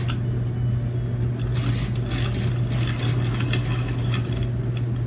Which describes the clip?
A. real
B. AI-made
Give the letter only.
A